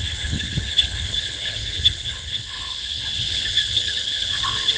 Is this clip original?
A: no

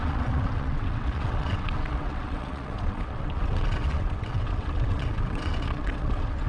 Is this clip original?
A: no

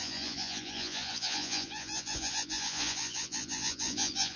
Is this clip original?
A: no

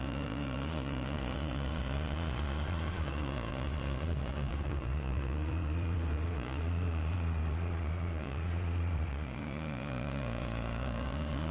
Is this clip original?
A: no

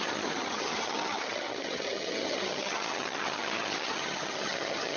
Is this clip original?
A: no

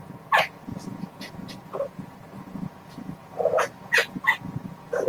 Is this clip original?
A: no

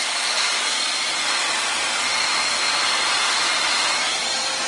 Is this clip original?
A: no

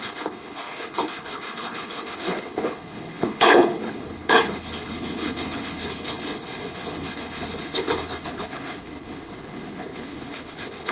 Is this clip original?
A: no